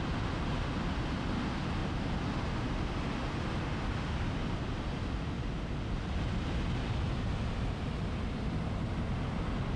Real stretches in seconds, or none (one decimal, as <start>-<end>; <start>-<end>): 0.0-9.8